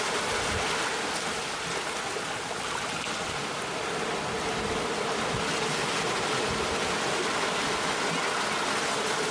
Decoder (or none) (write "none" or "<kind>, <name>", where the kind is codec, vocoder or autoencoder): none